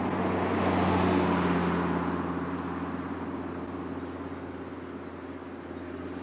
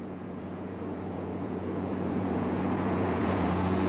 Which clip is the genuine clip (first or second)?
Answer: first